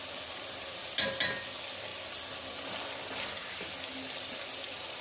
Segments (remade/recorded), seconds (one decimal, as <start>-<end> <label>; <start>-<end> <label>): 0.0-5.0 recorded